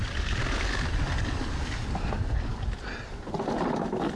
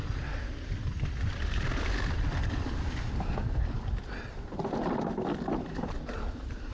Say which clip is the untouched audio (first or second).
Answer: first